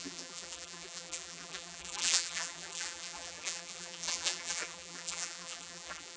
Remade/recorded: remade